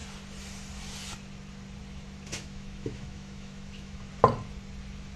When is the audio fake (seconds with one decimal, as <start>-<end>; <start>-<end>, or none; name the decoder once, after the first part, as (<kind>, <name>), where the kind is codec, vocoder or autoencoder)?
2.3-4.1 (autoencoder, DAC-VAE)